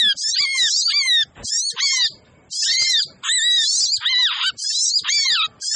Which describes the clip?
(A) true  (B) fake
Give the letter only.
A